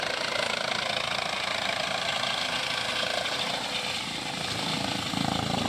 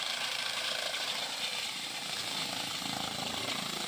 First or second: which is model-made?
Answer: second